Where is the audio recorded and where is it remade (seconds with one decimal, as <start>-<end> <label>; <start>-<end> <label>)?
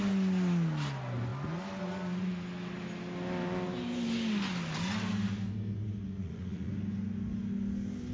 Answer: 0.0-6.2 recorded; 6.2-6.7 remade; 6.7-8.1 recorded